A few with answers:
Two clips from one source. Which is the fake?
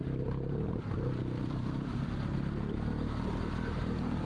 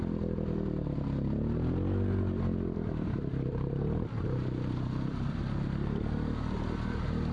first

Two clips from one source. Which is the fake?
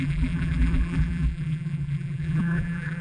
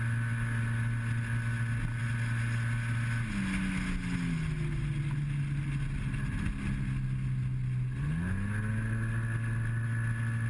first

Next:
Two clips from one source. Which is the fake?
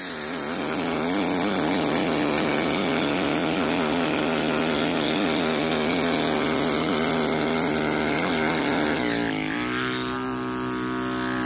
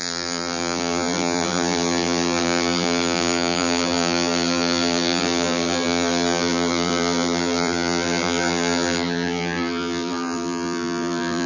second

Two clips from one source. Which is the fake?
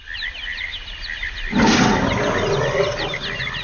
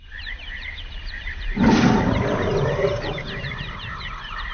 second